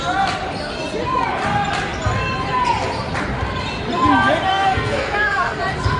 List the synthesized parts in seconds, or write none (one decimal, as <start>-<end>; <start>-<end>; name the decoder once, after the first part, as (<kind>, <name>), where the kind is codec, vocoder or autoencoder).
4.5-5.6 (codec, SNAC)